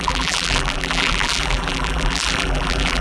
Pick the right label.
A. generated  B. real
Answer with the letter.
A